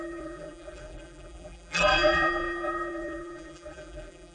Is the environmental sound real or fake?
fake